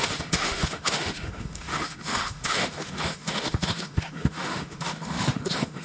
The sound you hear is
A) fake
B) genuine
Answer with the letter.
A